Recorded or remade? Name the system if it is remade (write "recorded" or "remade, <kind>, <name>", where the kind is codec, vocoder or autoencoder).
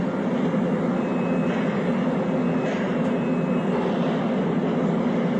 recorded